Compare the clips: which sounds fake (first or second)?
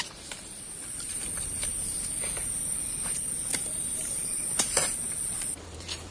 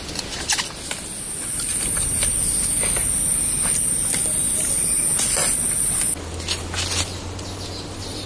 first